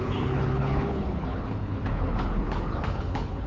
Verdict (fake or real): fake